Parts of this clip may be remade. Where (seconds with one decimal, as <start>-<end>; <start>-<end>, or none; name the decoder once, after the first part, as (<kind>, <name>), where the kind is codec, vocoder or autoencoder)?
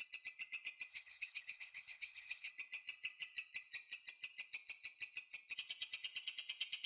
0.9-2.5 (codec, HILCodec)